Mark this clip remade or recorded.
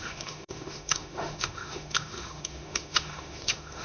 remade